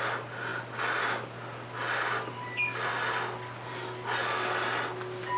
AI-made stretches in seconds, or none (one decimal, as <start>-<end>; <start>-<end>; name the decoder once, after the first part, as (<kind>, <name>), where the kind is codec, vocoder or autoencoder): none